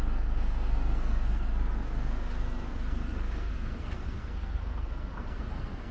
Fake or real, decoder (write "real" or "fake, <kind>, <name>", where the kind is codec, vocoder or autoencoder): fake, codec, SNAC